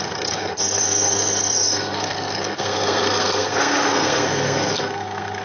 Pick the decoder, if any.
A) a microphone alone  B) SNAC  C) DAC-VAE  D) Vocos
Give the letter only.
B